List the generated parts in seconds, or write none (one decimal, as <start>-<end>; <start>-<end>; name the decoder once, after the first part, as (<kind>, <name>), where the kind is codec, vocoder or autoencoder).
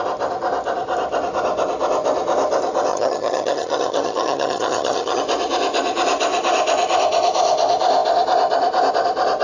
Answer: 2.9-5.2 (vocoder, HiFi-GAN)